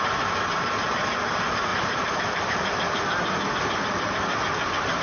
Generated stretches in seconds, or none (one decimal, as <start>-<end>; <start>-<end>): 1.7-5.0